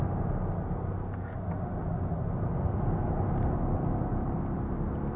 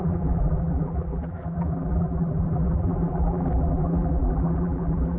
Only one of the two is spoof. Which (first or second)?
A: second